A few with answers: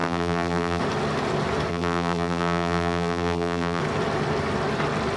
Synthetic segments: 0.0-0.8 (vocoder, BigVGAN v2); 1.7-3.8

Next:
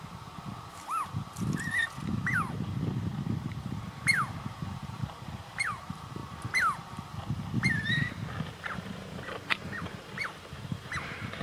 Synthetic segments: 0.0-3.1 (vocoder, BigVGAN v2); 3.6-6.2; 8.5-11.4

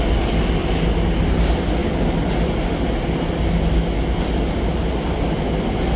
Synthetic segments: none

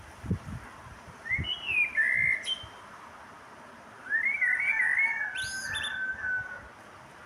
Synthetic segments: none

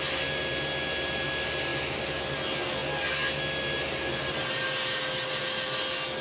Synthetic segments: none

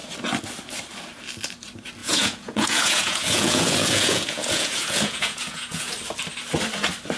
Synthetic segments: 2.0-5.9 (vocoder, Vocos)

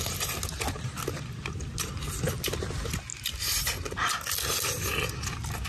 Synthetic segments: none